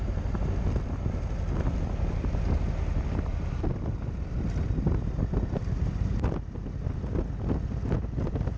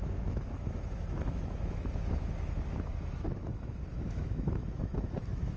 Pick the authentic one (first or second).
first